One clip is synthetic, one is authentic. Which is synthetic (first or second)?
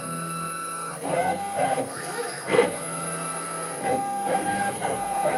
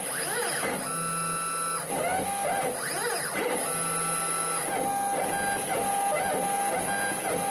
first